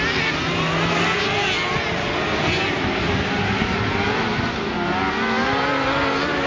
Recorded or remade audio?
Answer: recorded